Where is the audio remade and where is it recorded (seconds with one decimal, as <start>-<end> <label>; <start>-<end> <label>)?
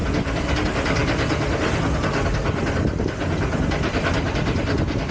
0.0-5.1 recorded